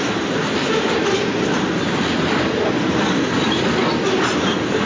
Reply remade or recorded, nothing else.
recorded